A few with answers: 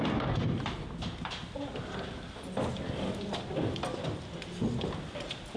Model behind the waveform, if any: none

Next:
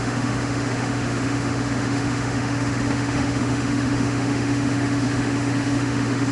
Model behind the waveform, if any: autoencoder, DAC-VAE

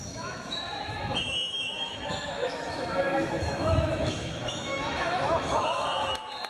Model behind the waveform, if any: autoencoder, DAC-VAE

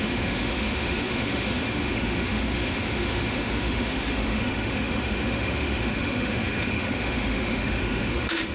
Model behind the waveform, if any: autoencoder, DAC-VAE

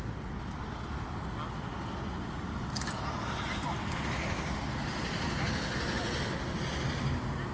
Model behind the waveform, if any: none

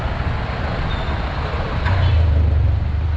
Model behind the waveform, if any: none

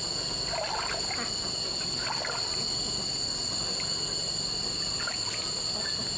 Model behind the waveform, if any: none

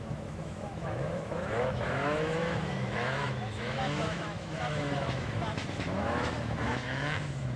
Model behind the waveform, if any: autoencoder, DAC-VAE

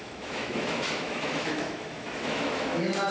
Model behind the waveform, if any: autoencoder, DAC-VAE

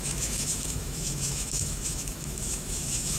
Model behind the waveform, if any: autoencoder, DAC-VAE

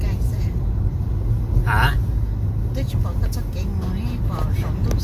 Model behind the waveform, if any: none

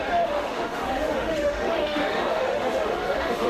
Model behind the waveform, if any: autoencoder, DAC-VAE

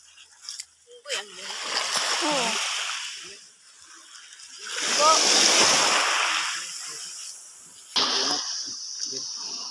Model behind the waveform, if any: none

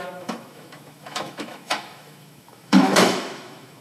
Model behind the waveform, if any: autoencoder, DAC-VAE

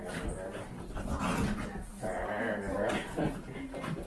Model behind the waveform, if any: none